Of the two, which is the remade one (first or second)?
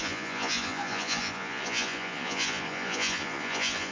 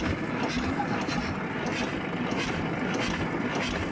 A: first